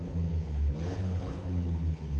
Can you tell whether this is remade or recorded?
remade